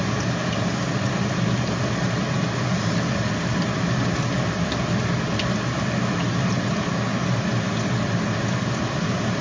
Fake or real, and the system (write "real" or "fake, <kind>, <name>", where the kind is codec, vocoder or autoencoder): real